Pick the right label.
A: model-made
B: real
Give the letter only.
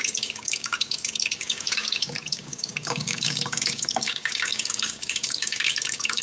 A